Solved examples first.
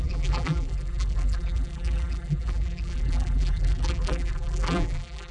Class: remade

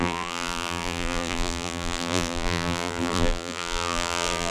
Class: remade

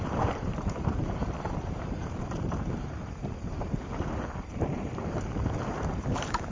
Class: remade